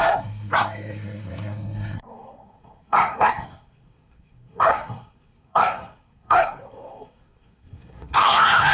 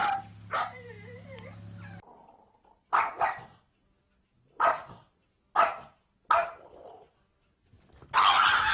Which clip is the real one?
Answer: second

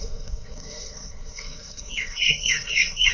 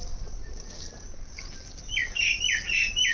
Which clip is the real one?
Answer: second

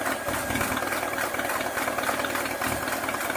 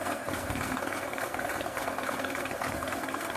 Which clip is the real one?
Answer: first